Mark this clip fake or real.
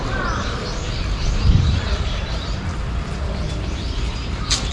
fake